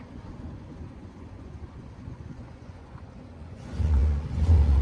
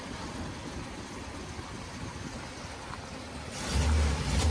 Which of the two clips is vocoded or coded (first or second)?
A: first